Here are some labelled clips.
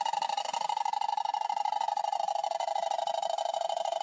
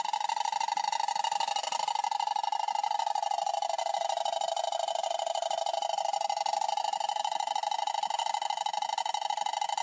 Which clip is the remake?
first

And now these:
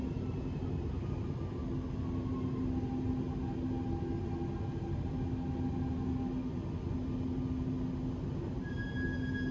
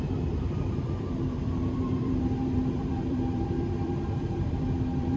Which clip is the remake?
second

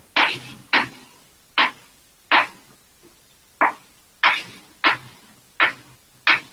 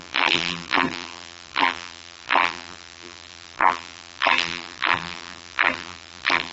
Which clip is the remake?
second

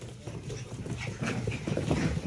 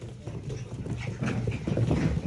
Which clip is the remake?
first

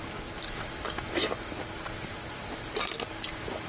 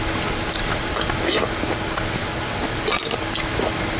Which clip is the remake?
first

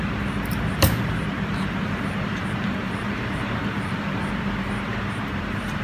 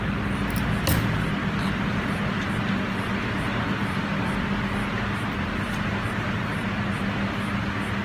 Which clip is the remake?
first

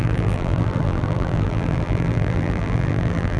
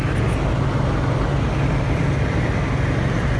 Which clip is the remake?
first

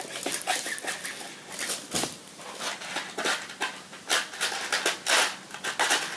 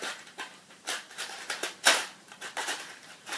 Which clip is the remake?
second